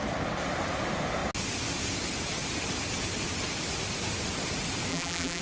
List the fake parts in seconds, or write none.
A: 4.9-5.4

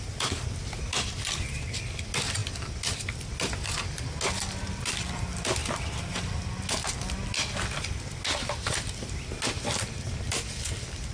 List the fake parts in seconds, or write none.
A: none

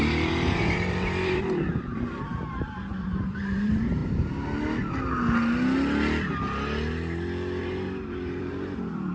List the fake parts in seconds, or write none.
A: 0.0-4.0; 7.6-9.1

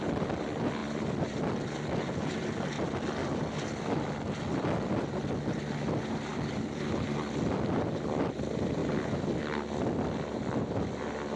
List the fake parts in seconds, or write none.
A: 0.8-1.4